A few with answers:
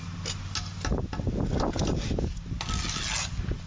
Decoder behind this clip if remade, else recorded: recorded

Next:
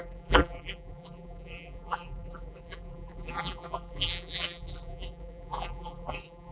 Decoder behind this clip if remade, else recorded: remade, vocoder, BigVGAN v2